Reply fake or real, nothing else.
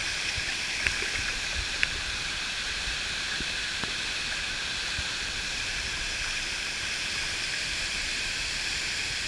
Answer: fake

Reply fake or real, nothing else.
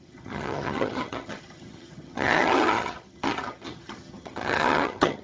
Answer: fake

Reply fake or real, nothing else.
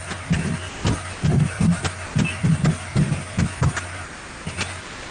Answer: real